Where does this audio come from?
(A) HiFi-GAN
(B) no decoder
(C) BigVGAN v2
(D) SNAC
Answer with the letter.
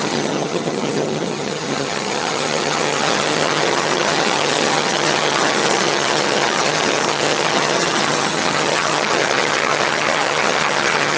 A